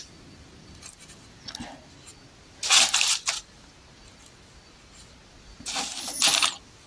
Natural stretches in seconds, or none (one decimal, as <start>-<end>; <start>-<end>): 0.0-6.9